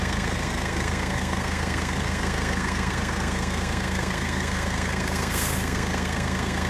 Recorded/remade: remade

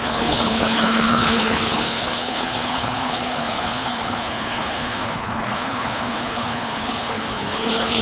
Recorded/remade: remade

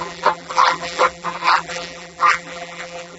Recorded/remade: remade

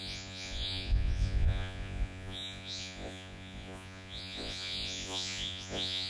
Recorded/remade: remade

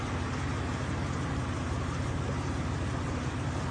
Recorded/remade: recorded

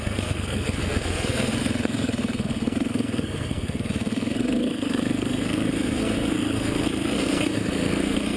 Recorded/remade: remade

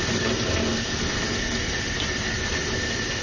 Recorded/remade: recorded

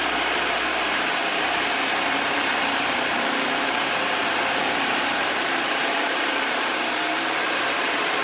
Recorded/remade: remade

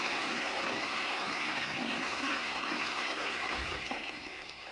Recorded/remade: remade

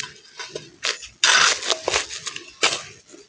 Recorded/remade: recorded